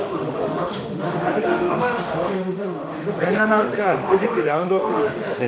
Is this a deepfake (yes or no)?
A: yes